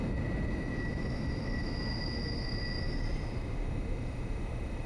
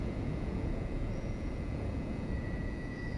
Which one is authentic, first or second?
first